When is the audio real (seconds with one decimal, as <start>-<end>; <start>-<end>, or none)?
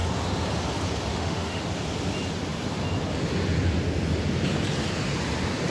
0.0-1.1; 1.6-5.7